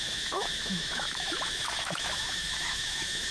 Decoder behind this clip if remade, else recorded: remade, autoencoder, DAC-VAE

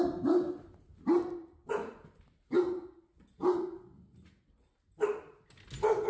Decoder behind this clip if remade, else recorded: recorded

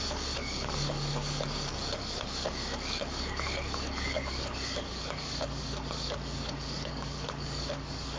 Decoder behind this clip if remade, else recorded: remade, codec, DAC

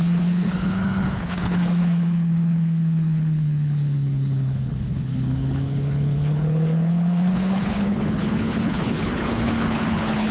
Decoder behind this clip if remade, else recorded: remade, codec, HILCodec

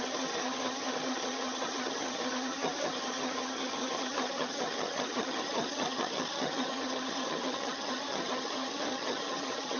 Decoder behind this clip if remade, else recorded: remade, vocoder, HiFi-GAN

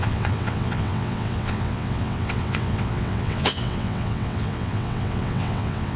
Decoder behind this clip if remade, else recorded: remade, vocoder, WaveNeXt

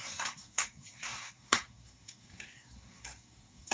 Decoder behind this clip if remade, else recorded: remade, codec, SNAC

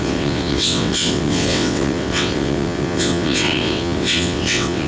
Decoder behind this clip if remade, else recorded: remade, vocoder, WaveNeXt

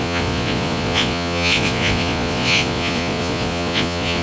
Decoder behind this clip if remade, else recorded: remade, vocoder, Vocos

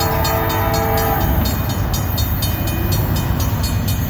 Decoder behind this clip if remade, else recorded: recorded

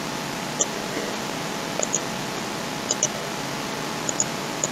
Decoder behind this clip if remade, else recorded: recorded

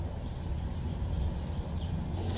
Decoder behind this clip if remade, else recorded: recorded